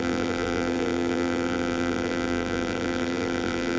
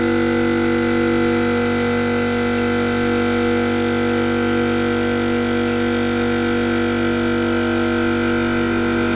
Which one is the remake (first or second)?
first